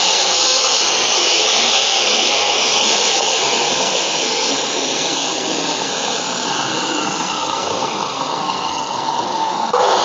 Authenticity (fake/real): fake